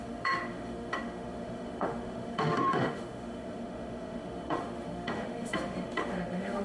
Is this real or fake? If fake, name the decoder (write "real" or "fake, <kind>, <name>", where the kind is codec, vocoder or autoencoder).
fake, autoencoder, DAC-VAE